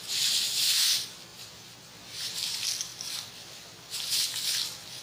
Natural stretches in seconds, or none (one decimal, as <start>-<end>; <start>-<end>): 0.0-1.3; 1.9-5.0